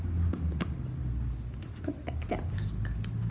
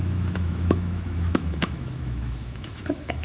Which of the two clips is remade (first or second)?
second